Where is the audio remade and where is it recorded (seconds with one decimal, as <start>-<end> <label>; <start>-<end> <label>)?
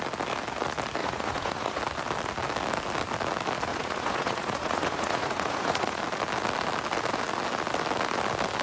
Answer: 0.0-1.0 recorded; 1.0-1.8 remade; 1.8-3.7 recorded; 3.7-6.0 remade; 6.0-8.6 recorded